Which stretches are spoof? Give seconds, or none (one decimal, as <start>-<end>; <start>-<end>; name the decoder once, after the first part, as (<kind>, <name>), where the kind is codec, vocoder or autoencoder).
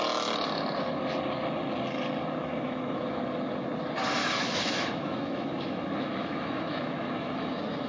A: 2.4-3.2 (autoencoder, DAC-VAE); 4.2-7.9